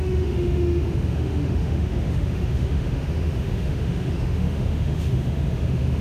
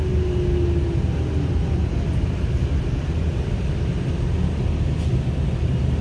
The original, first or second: second